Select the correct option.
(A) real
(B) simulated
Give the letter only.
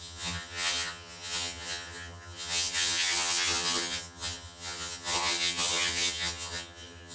B